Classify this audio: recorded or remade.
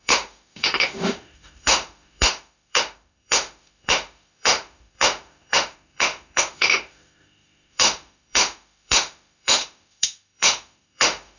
remade